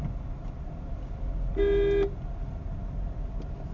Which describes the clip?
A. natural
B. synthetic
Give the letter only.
A